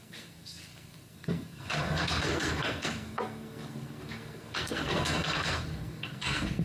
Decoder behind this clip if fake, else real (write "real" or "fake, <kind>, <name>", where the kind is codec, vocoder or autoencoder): fake, codec, SNAC